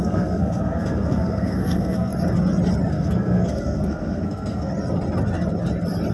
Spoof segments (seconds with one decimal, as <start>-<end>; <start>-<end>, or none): 0.0-2.1; 2.9-4.7